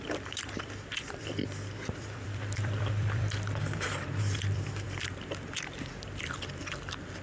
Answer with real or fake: fake